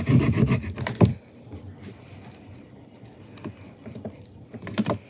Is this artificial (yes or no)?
no